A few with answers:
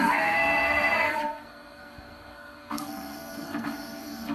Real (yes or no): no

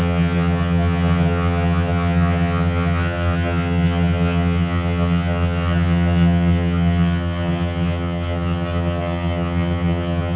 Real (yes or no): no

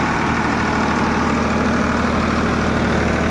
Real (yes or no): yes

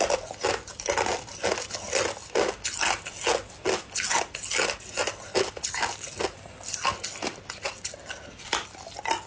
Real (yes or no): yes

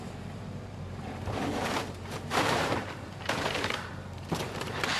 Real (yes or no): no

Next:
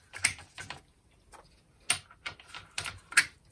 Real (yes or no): yes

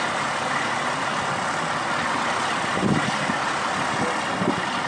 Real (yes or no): yes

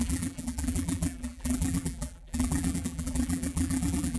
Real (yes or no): no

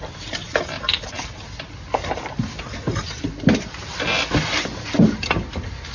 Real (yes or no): yes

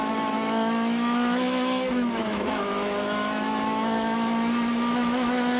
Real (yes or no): no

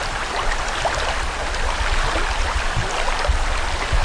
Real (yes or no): yes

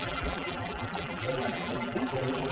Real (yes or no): no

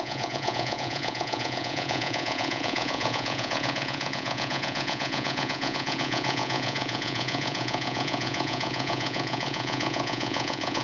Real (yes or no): no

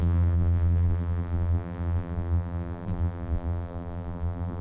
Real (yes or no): no